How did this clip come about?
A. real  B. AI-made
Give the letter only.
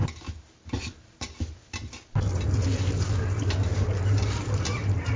A